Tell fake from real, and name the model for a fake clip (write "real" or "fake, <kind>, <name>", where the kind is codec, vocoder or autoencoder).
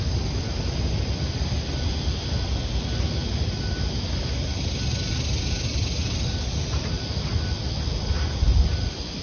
real